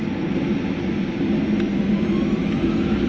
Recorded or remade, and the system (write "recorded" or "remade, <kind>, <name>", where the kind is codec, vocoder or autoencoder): recorded